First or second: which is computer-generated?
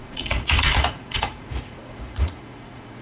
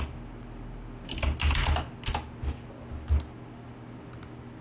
first